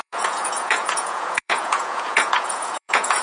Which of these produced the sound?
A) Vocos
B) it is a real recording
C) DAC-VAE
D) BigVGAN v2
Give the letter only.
A